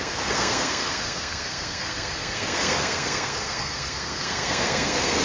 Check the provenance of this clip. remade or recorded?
remade